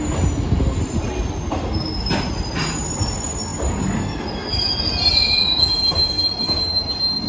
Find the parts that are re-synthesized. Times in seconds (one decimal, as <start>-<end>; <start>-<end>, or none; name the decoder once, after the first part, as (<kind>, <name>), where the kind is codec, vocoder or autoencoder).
none